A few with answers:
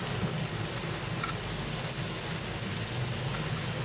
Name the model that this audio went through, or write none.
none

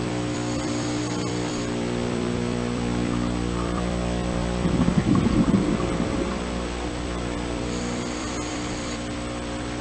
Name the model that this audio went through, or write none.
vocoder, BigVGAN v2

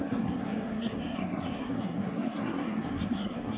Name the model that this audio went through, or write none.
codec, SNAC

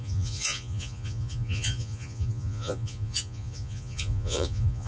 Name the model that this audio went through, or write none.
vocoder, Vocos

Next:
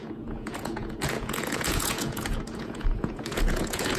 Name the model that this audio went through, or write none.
vocoder, Vocos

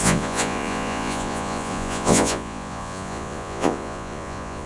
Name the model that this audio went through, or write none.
vocoder, Vocos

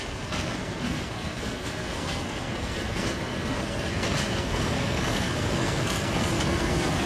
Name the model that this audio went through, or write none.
codec, SNAC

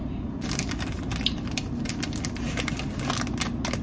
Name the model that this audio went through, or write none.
none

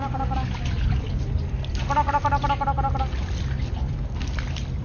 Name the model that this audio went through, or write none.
vocoder, BigVGAN v2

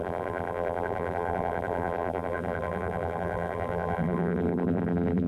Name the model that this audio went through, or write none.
vocoder, BigVGAN v2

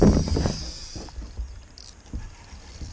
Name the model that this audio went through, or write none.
vocoder, BigVGAN v2